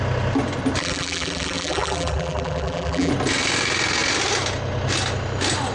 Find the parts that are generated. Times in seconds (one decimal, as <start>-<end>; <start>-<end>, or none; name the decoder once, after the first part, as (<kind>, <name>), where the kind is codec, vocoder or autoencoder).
0.8-3.1 (vocoder, BigVGAN v2)